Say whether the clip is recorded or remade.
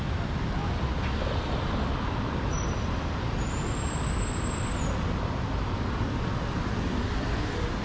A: recorded